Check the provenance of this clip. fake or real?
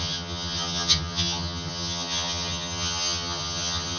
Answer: fake